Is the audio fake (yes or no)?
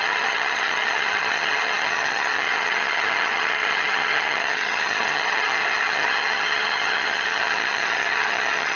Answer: yes